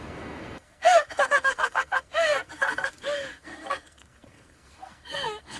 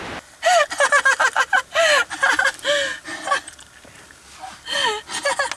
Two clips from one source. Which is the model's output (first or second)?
first